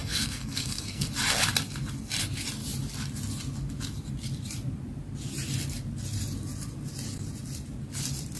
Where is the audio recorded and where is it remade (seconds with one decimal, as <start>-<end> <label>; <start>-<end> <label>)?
0.0-1.1 remade; 1.1-8.4 recorded